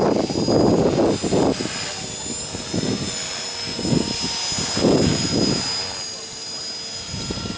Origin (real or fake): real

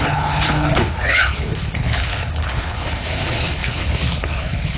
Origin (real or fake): fake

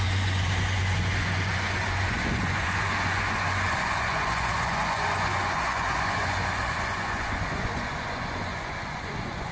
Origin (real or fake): fake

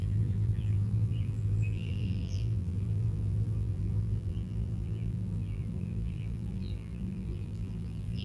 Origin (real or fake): fake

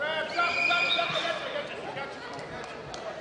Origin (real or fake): real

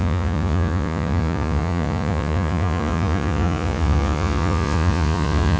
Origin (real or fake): fake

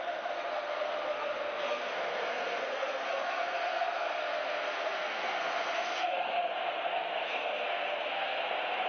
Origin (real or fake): fake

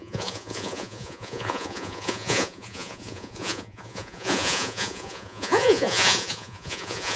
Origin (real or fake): fake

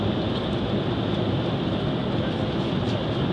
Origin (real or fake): real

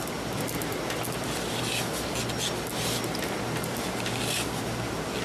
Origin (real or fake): real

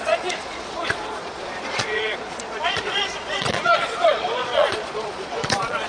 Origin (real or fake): fake